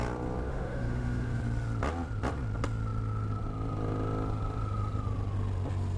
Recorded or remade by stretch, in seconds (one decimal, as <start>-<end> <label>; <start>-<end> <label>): 0.0-0.5 recorded; 0.5-1.4 remade; 1.4-6.0 recorded